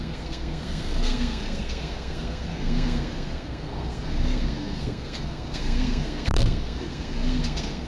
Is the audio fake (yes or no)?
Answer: yes